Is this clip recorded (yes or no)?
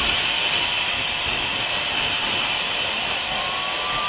yes